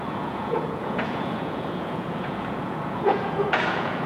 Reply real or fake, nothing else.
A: fake